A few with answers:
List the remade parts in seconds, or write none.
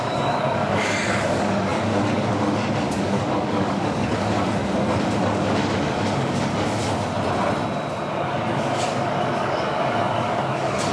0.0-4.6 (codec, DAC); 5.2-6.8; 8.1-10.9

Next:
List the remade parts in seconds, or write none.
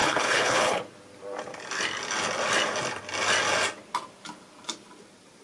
0.0-0.8 (codec, HILCodec)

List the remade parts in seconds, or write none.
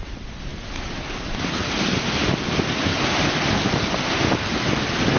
none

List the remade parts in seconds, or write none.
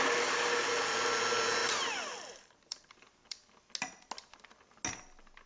1.6-3.7 (vocoder, BigVGAN v2)